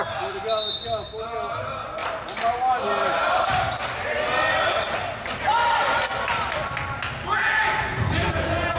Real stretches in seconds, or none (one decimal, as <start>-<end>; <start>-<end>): 0.0-2.0; 3.6-8.8